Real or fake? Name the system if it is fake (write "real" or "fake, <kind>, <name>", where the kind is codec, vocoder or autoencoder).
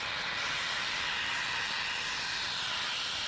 real